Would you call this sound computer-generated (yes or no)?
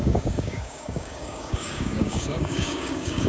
yes